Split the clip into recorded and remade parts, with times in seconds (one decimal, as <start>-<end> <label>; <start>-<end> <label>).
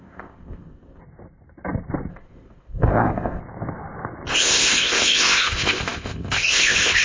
0.0-1.0 remade; 1.0-2.1 recorded; 2.1-3.4 remade; 3.4-4.3 recorded; 4.3-7.0 remade